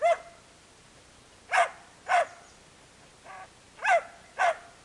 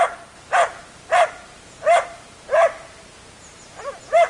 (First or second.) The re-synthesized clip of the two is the second